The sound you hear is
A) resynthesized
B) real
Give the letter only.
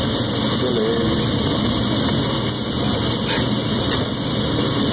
B